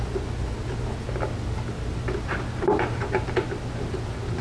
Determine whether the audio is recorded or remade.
recorded